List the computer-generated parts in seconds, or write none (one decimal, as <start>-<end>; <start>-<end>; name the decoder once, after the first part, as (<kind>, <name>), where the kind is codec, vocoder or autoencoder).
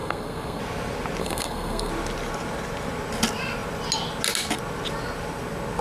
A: 0.0-0.6 (codec, SNAC); 1.2-1.9